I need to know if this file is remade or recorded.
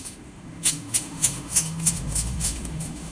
remade